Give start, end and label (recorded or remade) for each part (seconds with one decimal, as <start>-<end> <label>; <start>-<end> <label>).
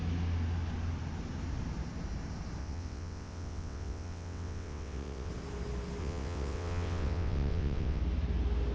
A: 0.0-2.6 recorded; 2.6-5.3 remade; 5.3-6.0 recorded; 6.0-8.0 remade; 8.0-8.7 recorded